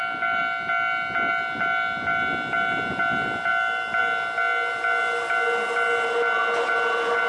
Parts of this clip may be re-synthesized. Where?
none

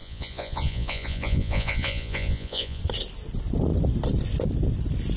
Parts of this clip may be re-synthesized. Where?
0.0-2.8 (vocoder, Vocos)

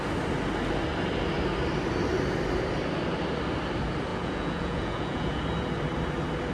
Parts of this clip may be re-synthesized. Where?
4.1-5.4 (vocoder, Vocos)